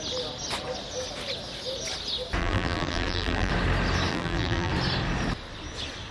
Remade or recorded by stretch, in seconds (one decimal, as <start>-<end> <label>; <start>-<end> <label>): 0.0-2.4 recorded; 2.4-3.5 remade; 3.5-4.1 recorded; 4.1-4.7 remade; 4.7-6.1 recorded